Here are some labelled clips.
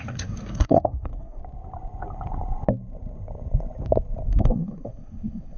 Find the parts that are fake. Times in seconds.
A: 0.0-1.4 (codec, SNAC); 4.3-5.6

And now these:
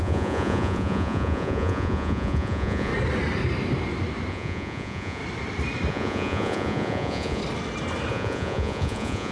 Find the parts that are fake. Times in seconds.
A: 0.0-2.9 (vocoder, Vocos); 4.3-5.2; 5.9-7.4; 8.1-9.3

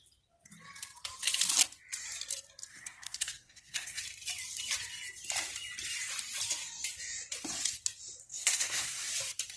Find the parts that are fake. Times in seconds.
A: 2.7-4.0 (codec, SNAC); 8.2-9.1

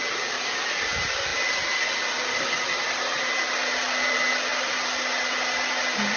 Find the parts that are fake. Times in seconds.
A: none

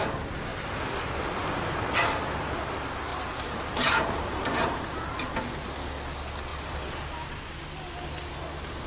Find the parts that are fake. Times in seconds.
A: 3.1-5.3 (vocoder, BigVGAN v2); 6.5-7.0

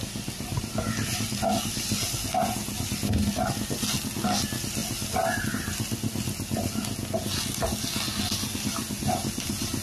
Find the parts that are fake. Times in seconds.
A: none

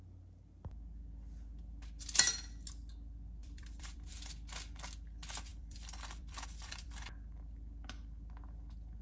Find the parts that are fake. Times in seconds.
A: 3.4-4.1 (vocoder, BigVGAN v2); 5.5-6.9